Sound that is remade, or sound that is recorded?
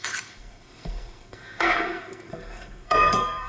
remade